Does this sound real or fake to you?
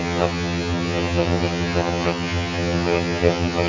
fake